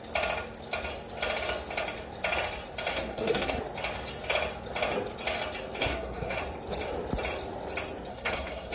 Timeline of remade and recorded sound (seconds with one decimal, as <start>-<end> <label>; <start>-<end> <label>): 0.0-2.9 recorded; 2.9-3.6 remade; 3.6-5.8 recorded; 5.8-6.4 remade; 6.4-8.1 recorded; 8.1-8.7 remade